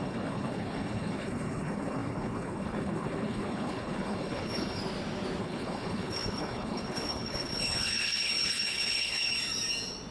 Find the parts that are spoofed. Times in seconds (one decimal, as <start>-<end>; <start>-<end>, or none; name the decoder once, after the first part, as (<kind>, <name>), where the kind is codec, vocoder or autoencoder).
0.0-4.8 (codec, HILCodec); 5.4-9.3